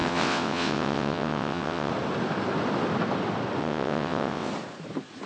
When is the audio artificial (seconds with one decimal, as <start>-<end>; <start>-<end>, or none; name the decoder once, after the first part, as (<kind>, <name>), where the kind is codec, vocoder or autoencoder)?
0.0-1.9 (vocoder, WaveNeXt); 3.6-4.5